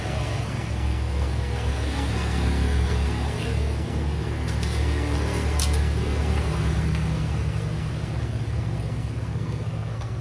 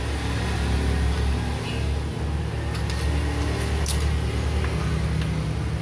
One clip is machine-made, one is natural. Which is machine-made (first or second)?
first